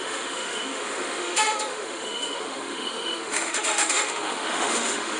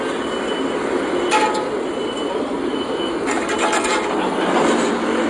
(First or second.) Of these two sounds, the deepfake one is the first